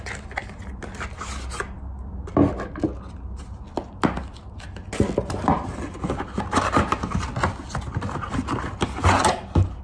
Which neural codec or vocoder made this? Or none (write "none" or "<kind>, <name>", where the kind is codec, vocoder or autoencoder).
none